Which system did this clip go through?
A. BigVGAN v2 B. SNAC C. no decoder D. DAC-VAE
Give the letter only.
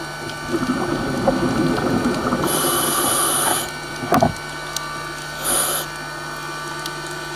C